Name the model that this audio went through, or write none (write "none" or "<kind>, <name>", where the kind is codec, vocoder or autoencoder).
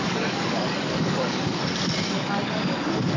codec, DAC